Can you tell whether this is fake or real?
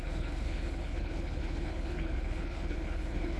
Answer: fake